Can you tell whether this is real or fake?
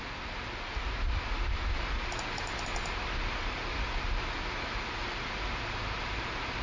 real